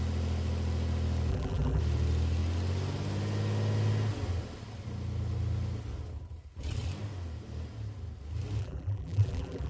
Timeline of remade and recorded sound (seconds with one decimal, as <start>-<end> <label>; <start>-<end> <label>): 0.0-1.3 recorded; 1.3-1.8 remade; 1.8-8.6 recorded; 8.6-9.7 remade